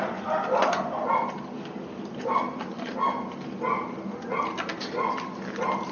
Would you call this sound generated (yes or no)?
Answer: no